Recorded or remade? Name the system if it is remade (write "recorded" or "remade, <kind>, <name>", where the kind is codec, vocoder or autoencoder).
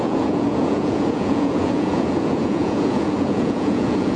remade, vocoder, Vocos